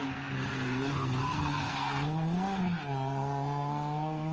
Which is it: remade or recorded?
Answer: remade